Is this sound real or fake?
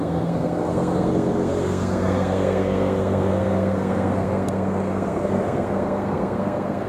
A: fake